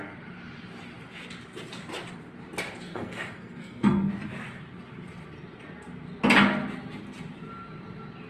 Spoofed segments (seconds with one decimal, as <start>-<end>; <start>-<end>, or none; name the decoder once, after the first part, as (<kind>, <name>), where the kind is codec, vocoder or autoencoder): 2.9-4.1 (codec, SNAC)